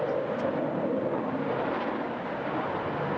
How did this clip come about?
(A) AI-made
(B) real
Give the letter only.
B